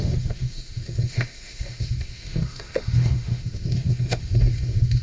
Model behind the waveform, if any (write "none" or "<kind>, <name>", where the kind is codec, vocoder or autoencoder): autoencoder, DAC-VAE